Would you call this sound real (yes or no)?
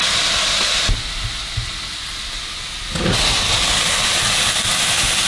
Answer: yes